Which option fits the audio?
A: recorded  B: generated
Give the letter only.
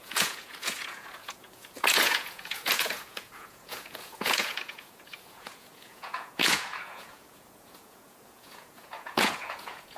B